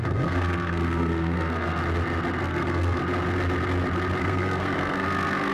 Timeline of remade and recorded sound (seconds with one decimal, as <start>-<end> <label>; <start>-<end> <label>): 0.0-1.8 remade; 1.8-2.4 recorded; 2.4-3.0 remade; 3.0-4.2 recorded; 4.2-5.5 remade

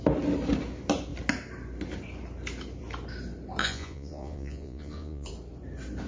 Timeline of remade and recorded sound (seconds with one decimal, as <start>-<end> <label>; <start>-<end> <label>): 0.0-3.6 recorded; 3.6-5.3 remade; 5.3-6.1 recorded

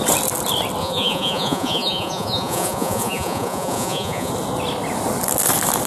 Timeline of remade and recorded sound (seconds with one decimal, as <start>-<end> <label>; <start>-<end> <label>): 0.0-0.8 recorded; 0.8-4.3 remade; 4.3-5.9 recorded

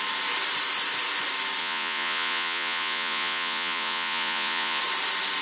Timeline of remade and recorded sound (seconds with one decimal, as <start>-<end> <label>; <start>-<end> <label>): 0.0-1.6 recorded; 1.6-4.8 remade; 4.8-5.4 recorded

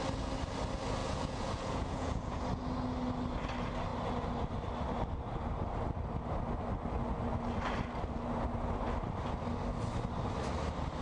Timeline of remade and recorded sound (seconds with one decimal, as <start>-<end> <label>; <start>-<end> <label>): 0.0-1.0 recorded; 1.0-2.4 remade; 2.4-11.0 recorded

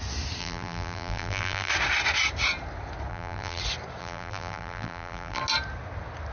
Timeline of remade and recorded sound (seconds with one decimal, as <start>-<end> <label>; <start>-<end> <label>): 0.0-0.4 recorded; 0.4-1.7 remade; 1.7-3.1 recorded; 3.1-3.6 remade; 3.6-4.0 recorded; 4.0-5.4 remade; 5.4-6.3 recorded

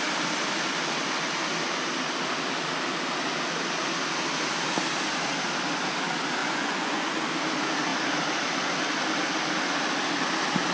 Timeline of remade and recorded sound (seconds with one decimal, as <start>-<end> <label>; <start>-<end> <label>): 0.0-6.4 recorded; 6.4-7.1 remade; 7.1-10.7 recorded